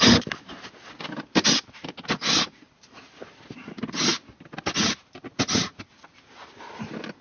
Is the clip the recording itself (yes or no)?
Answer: yes